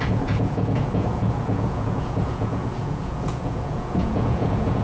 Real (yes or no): no